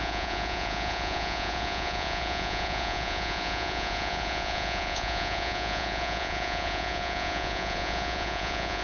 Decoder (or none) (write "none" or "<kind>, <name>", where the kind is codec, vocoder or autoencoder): vocoder, Vocos